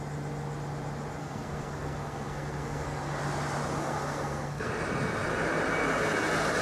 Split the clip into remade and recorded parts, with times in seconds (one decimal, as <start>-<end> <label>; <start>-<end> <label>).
0.0-1.2 recorded; 1.2-3.2 remade; 3.2-3.8 recorded; 3.8-4.7 remade; 4.7-6.6 recorded